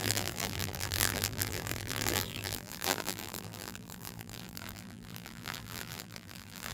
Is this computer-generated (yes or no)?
yes